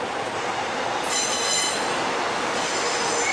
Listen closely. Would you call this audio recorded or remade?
recorded